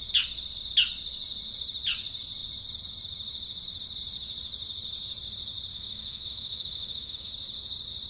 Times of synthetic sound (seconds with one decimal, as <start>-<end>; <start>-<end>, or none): 5.7-7.3